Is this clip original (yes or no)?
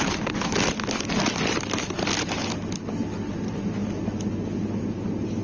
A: yes